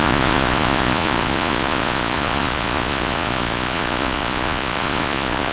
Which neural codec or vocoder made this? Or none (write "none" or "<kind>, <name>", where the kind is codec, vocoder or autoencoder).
vocoder, Vocos